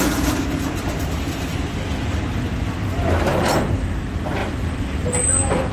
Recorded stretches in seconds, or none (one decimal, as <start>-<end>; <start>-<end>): 0.0-3.3; 4.0-4.4